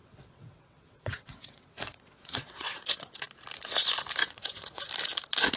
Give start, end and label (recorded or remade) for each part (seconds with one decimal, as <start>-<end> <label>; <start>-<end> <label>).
0.0-3.2 remade; 3.2-4.2 recorded; 4.2-4.9 remade; 4.9-5.6 recorded

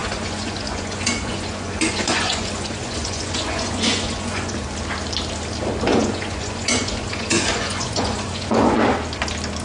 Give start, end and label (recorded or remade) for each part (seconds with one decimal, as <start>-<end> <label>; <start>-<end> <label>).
0.0-4.5 remade; 4.5-5.9 recorded; 5.9-8.8 remade; 8.8-9.6 recorded

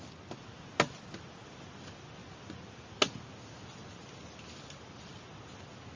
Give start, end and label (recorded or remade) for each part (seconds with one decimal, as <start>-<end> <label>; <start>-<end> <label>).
0.0-6.0 recorded

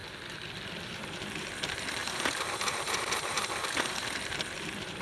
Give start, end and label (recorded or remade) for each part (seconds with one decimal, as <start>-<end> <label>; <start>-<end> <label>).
0.0-0.8 recorded; 0.8-5.0 remade

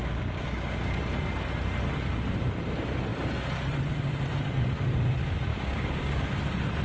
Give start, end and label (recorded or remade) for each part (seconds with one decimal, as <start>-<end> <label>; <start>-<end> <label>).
0.0-1.0 remade; 1.0-5.5 recorded; 5.5-6.2 remade; 6.2-6.8 recorded

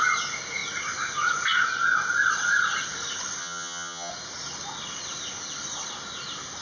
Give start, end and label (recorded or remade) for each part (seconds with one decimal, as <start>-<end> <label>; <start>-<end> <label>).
0.0-3.4 recorded; 3.4-4.1 remade; 4.1-6.6 recorded

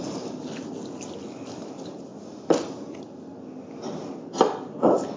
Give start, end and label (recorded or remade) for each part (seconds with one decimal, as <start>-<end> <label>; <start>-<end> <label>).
0.0-1.2 recorded; 1.2-1.7 remade; 1.7-5.2 recorded